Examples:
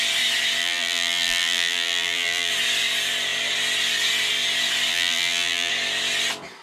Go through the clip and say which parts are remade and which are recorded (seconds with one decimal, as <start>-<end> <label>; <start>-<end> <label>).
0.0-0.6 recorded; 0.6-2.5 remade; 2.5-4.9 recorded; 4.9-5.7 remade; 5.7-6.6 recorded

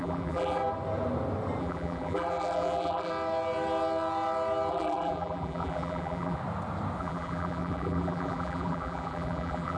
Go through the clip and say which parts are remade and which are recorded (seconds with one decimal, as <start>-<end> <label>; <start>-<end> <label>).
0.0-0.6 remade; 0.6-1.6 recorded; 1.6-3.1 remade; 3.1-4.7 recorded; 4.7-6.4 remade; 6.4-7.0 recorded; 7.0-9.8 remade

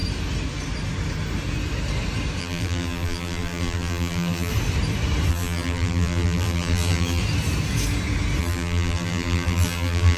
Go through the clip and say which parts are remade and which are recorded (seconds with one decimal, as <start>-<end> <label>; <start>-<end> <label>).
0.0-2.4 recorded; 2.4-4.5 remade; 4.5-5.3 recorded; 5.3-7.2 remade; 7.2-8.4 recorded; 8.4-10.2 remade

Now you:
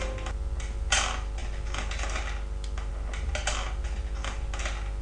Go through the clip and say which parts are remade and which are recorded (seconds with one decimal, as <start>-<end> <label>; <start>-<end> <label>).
0.0-5.0 recorded

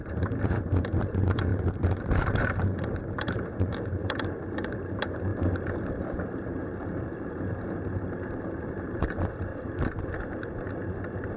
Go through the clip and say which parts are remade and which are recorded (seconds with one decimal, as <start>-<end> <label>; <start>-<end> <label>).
0.0-9.5 remade; 9.5-11.4 recorded

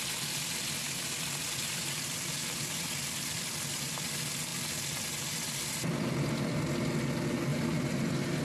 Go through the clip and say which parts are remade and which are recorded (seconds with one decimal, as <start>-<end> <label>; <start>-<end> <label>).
0.0-7.5 recorded; 7.5-8.4 remade

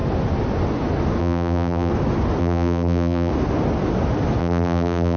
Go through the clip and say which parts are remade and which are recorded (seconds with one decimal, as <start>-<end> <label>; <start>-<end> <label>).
0.0-1.2 recorded; 1.2-1.9 remade; 1.9-2.4 recorded; 2.4-3.3 remade; 3.3-4.4 recorded; 4.4-5.2 remade

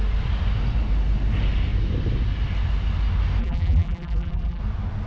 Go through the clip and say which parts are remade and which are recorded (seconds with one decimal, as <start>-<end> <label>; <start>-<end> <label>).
0.0-3.4 recorded; 3.4-4.6 remade; 4.6-5.1 recorded